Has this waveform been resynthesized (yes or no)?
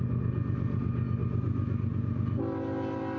no